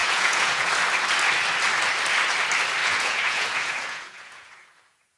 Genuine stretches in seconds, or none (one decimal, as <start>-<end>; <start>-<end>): 0.7-2.8